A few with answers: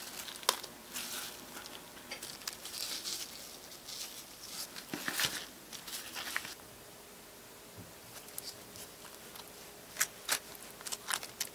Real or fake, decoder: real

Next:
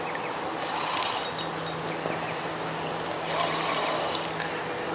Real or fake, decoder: real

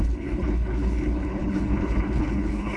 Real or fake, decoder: fake, codec, HILCodec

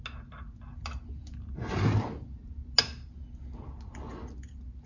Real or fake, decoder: real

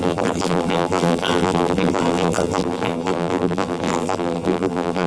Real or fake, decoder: fake, vocoder, BigVGAN v2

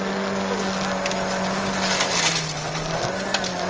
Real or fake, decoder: real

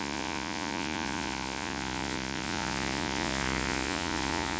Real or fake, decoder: fake, vocoder, Vocos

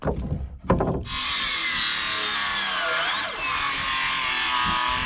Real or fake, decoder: real